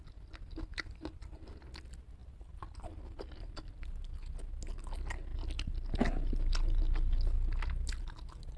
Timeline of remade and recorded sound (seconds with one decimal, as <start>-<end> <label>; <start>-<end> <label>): 0.0-8.6 recorded